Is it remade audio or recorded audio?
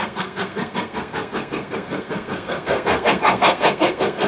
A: remade